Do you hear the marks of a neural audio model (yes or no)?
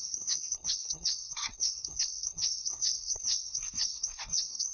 yes